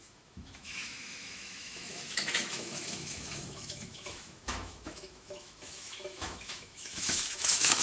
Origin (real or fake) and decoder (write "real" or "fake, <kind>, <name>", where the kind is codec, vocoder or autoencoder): fake, autoencoder, DAC-VAE